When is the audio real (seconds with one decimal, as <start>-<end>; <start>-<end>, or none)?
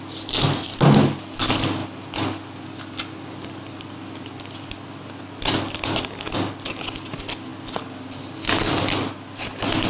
0.0-9.9